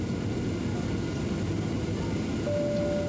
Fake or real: real